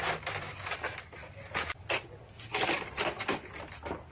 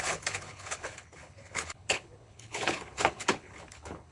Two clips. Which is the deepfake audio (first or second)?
second